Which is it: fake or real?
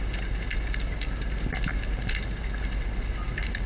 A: real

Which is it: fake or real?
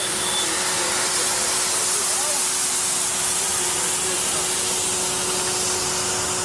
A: real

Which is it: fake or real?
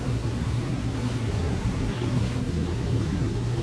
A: fake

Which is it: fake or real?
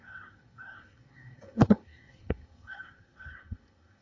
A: fake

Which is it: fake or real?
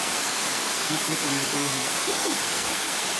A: fake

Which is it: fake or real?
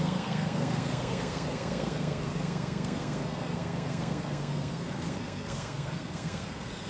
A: fake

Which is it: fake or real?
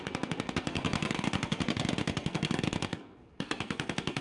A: fake